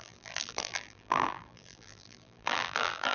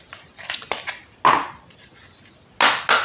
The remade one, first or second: first